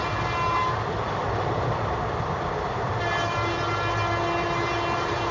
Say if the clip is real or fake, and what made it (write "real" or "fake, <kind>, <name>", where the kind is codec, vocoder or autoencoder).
real